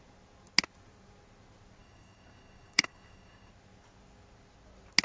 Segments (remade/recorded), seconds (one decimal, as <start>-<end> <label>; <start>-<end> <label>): 0.0-1.8 recorded; 1.8-3.5 remade; 3.5-5.0 recorded